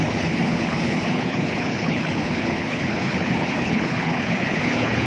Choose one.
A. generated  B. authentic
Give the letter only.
A